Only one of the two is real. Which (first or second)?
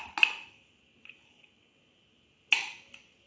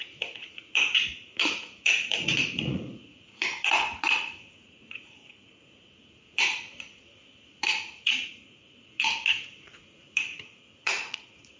first